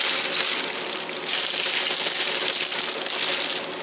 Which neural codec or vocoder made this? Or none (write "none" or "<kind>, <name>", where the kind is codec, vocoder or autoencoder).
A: none